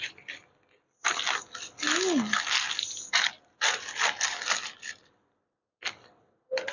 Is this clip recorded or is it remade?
recorded